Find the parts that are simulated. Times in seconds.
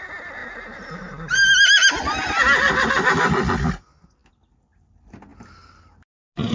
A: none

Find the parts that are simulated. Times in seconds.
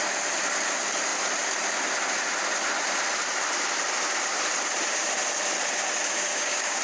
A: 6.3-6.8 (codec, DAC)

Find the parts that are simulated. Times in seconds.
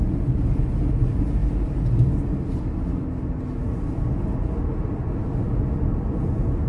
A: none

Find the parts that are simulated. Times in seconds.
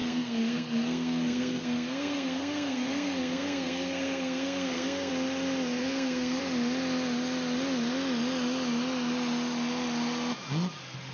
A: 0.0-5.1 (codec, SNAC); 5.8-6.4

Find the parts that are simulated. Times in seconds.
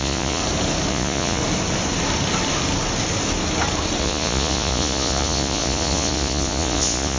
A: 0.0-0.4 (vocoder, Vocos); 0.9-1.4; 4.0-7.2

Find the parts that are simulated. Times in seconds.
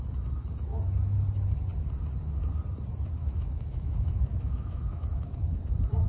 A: 3.2-5.6 (autoencoder, DAC-VAE)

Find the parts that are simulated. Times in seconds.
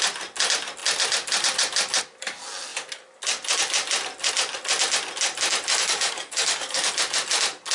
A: 5.7-6.9 (codec, DAC)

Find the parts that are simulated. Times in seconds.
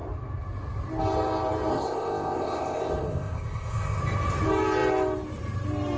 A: 1.7-4.0 (codec, ZipCodec)